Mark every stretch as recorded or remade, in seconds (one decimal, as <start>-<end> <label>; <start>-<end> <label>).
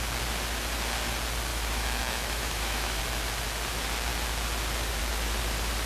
0.0-1.5 recorded; 1.5-3.0 remade; 3.0-5.9 recorded